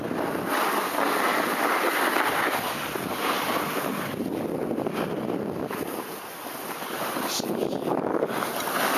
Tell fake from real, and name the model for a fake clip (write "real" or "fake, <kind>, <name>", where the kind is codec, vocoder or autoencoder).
real